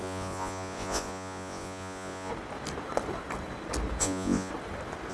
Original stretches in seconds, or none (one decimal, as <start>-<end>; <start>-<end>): 2.3-4.0; 4.5-5.1